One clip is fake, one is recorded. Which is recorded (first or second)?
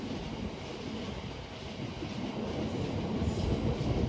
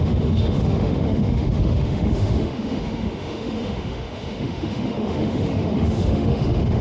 first